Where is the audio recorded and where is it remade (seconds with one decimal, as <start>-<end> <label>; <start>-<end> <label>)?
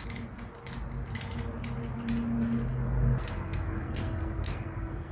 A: 0.0-2.7 recorded; 2.7-5.1 remade